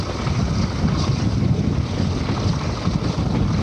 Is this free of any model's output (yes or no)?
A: yes